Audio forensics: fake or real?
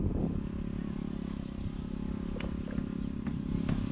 real